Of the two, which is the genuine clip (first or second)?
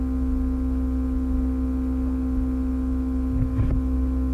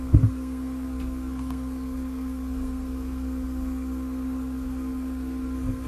first